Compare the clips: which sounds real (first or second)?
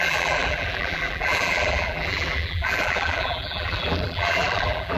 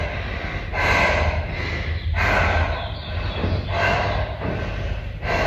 second